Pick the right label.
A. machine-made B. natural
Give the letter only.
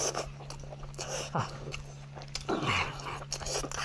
B